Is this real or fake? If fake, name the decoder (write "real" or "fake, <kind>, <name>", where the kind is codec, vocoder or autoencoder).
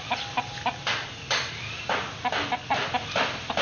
real